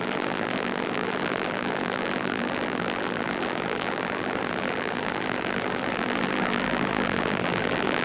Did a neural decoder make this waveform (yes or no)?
yes